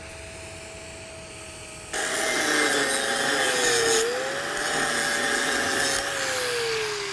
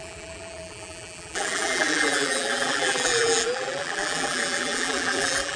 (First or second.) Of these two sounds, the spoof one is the second